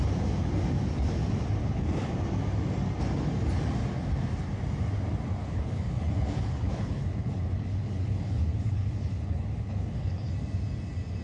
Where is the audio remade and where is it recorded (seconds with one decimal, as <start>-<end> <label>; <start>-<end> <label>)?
0.0-1.6 recorded; 1.6-2.1 remade; 2.1-5.4 recorded; 5.4-10.3 remade; 10.3-11.2 recorded